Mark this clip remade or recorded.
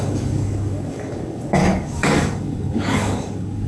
remade